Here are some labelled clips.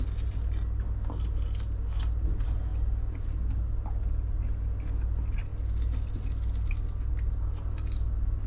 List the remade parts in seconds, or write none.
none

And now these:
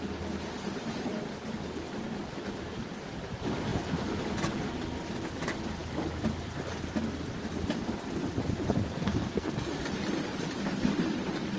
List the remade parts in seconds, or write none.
8.8-9.7 (codec, SNAC)